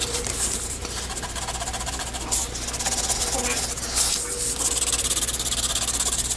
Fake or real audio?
real